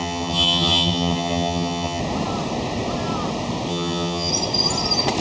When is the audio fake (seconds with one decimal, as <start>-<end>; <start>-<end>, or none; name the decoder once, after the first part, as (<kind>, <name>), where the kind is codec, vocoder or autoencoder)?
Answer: 0.0-2.0 (vocoder, HiFi-GAN); 3.7-4.3